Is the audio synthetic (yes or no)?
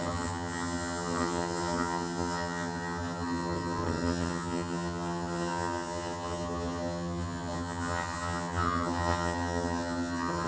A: yes